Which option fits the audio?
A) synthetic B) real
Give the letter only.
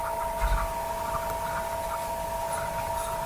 B